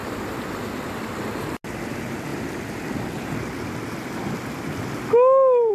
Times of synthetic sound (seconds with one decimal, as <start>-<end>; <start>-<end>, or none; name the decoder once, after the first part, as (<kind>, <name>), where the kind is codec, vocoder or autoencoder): none